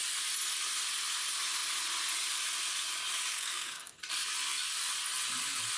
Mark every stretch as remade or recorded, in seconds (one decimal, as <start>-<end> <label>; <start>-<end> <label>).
0.0-3.3 recorded; 3.3-4.0 remade; 4.0-5.8 recorded